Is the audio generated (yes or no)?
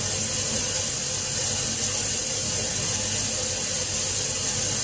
no